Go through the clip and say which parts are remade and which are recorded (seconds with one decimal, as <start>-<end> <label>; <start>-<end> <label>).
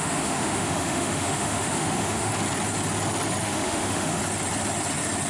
0.0-2.3 remade; 2.3-3.4 recorded; 3.4-4.2 remade; 4.2-5.3 recorded